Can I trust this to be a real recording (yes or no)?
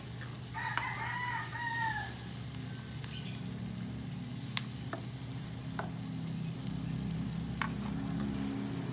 yes